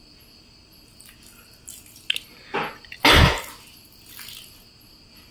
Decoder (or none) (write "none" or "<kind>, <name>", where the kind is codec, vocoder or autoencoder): none